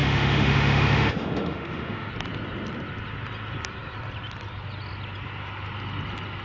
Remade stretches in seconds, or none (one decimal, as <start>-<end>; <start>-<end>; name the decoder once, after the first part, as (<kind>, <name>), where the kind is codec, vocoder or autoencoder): 0.0-2.1 (autoencoder, DAC-VAE)